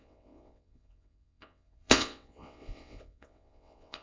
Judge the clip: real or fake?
fake